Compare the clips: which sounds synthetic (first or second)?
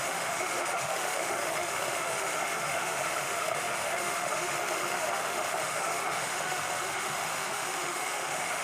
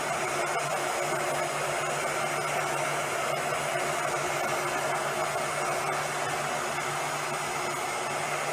first